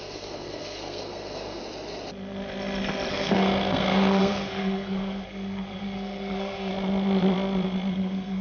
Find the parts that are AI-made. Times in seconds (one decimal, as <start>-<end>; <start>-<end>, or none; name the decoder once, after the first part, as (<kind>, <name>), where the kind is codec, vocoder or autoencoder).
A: 0.0-1.6 (codec, SNAC); 3.1-6.7; 7.9-8.4